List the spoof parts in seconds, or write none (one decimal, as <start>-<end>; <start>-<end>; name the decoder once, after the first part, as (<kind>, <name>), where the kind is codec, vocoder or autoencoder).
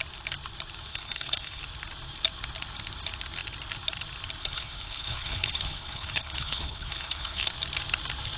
0.9-1.6 (codec, HILCodec); 4.4-7.5